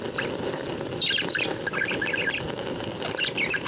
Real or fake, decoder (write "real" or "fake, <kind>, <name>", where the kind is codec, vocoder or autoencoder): real